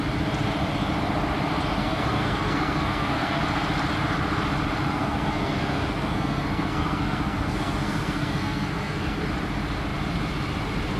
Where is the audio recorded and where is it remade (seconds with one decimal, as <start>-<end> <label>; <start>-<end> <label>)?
0.0-1.8 recorded; 1.8-3.4 remade; 3.4-4.9 recorded; 4.9-9.2 remade; 9.2-11.0 recorded